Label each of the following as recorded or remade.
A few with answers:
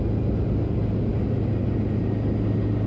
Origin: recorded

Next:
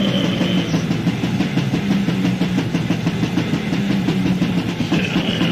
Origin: recorded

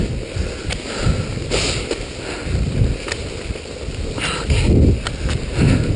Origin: recorded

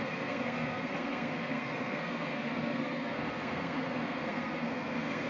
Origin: remade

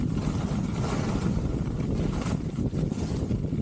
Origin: recorded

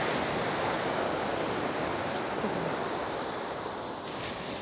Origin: recorded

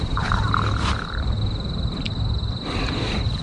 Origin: recorded